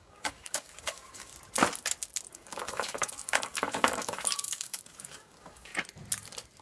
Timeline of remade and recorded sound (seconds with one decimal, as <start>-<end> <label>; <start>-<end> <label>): 0.0-1.3 remade; 1.3-2.3 recorded; 2.3-5.7 remade; 5.7-6.6 recorded